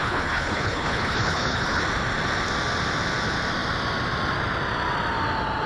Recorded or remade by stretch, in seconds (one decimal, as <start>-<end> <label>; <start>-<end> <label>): 0.0-1.8 remade; 1.8-5.7 recorded